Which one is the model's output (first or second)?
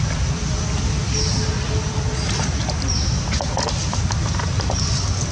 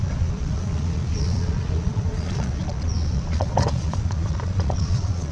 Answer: second